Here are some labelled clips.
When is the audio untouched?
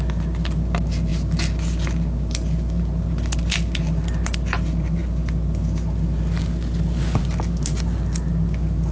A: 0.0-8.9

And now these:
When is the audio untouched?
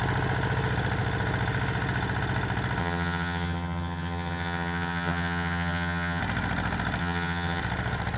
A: 0.0-2.8; 6.2-7.0; 7.6-8.2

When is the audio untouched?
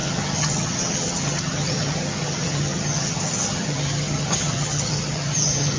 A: none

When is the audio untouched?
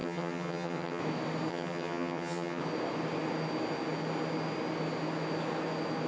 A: 1.0-1.5; 2.6-6.1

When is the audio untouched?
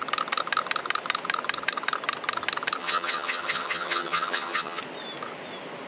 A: 0.0-2.8; 4.8-5.9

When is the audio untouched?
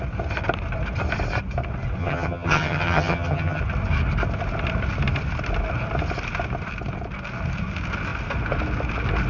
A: 0.0-2.0; 3.6-9.3